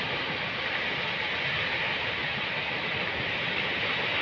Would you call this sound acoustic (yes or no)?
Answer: yes